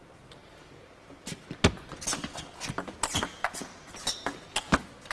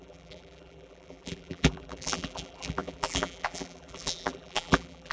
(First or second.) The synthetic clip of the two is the second